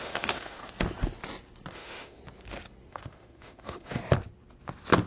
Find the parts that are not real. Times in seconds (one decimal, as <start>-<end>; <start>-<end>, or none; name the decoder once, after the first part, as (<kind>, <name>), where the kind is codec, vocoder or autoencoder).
0.0-0.6 (autoencoder, DAC-VAE); 1.7-2.2; 2.9-4.0